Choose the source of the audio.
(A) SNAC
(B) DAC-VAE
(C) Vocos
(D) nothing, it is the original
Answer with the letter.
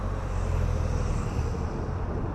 D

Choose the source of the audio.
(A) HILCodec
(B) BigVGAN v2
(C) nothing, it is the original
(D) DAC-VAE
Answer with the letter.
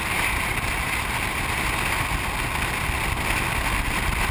C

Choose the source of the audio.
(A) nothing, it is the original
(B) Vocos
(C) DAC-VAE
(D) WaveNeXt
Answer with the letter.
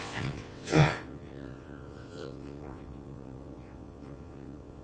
D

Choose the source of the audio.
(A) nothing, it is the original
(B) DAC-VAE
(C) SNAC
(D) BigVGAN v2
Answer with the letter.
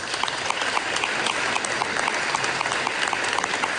A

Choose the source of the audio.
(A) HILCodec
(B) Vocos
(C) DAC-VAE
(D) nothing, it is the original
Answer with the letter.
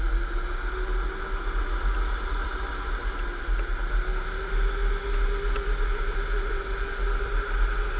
D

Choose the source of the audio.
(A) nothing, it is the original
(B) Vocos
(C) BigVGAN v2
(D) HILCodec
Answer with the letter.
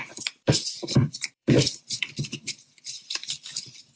C